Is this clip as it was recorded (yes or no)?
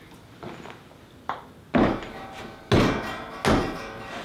yes